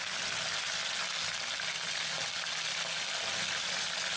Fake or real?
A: real